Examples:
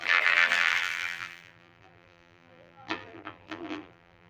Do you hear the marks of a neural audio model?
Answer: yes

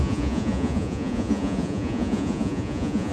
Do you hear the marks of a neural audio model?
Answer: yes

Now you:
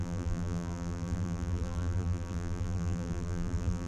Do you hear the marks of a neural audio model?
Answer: yes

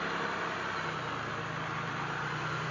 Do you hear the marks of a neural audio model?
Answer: no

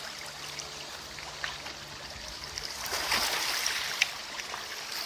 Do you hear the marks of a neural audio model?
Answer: no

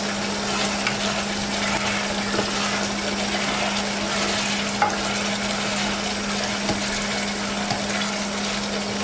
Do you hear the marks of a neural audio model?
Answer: no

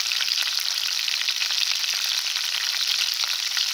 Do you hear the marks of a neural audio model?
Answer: yes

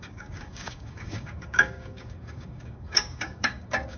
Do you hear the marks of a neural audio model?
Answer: yes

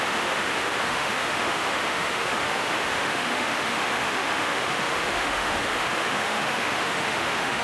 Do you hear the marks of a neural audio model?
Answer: yes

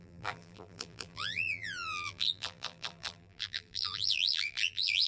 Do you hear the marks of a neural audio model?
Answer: yes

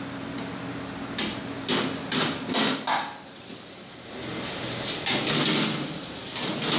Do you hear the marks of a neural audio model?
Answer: no